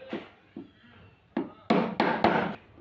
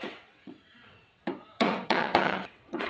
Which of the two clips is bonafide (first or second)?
first